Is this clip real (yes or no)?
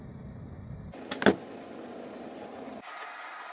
yes